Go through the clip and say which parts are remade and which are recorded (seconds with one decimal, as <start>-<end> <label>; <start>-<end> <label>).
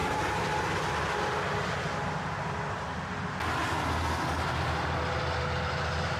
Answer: 0.0-0.6 remade; 0.6-6.2 recorded